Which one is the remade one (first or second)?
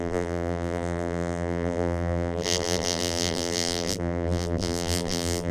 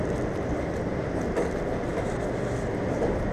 first